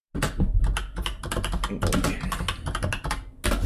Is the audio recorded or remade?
recorded